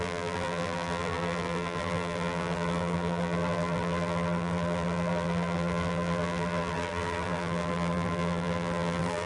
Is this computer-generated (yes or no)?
yes